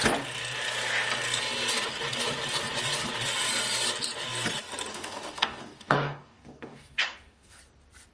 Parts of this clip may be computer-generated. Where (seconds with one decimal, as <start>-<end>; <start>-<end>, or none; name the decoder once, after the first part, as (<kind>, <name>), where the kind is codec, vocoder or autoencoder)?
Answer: 4.9-7.6 (codec, DAC)